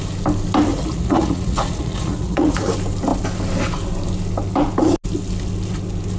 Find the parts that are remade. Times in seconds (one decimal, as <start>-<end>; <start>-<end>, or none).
0.7-2.7